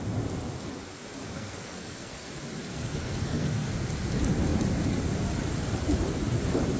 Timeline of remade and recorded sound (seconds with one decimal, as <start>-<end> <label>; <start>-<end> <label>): 0.0-1.2 recorded; 1.2-2.3 remade; 2.3-2.7 recorded; 2.7-3.7 remade; 3.7-6.8 recorded